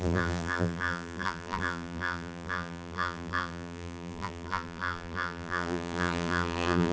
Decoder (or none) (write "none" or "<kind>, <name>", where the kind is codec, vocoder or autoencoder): vocoder, BigVGAN v2